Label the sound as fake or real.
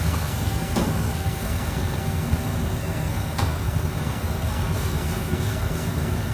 fake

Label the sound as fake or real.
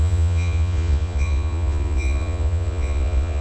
fake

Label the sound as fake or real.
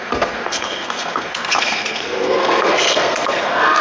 fake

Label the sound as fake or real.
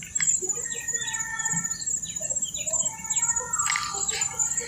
real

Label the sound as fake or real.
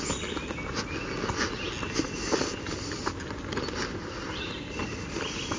real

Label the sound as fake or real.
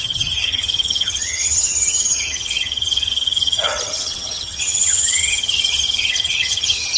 fake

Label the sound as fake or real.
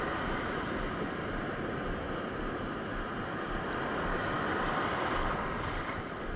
real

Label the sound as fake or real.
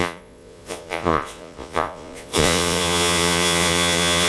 fake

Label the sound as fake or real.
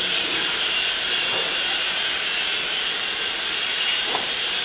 fake